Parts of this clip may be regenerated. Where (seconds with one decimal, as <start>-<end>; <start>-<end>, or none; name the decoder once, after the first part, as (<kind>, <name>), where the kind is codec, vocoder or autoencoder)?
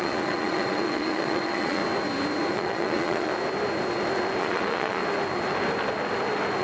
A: 0.0-1.8 (vocoder, Vocos); 2.5-3.3; 4.4-5.0